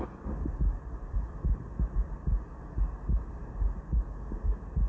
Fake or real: real